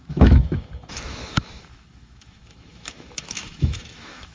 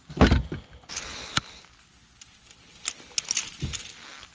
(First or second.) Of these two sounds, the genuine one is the second